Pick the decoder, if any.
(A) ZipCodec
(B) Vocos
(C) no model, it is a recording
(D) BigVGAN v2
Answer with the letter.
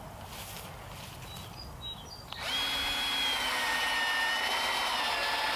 C